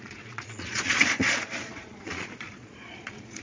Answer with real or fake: fake